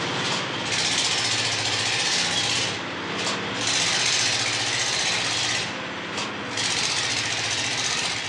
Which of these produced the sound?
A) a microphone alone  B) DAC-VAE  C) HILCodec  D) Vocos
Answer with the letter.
A